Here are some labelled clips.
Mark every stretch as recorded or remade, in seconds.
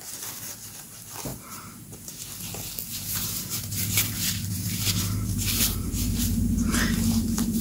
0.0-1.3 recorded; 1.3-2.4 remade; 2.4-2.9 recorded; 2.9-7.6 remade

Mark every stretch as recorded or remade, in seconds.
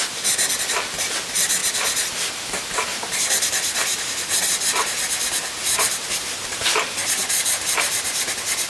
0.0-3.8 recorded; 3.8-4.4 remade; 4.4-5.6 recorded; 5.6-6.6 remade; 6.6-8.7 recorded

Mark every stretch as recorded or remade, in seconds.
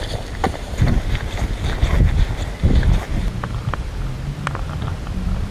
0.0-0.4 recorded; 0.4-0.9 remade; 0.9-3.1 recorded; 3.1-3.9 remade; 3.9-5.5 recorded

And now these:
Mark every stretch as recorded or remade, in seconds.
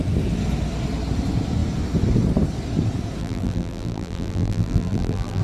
0.0-3.2 recorded; 3.2-5.4 remade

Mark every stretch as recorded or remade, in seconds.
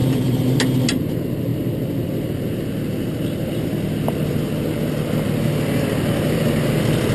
0.0-0.6 remade; 0.6-7.1 recorded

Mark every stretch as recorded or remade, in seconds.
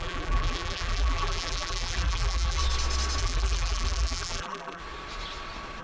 0.0-2.6 remade; 2.6-3.2 recorded; 3.2-4.8 remade; 4.8-5.8 recorded